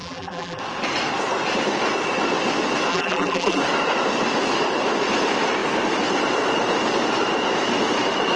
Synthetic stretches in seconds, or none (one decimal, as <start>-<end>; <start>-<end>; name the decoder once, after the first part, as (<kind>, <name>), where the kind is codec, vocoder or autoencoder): 0.0-0.6 (vocoder, BigVGAN v2); 2.9-3.6